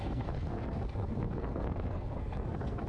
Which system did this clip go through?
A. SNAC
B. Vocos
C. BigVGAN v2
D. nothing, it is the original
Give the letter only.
A